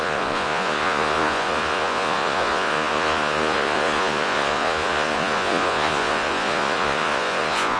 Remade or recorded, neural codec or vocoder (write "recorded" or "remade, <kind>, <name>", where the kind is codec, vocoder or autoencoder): remade, vocoder, Vocos